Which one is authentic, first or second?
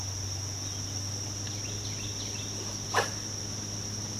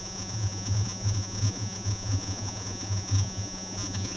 first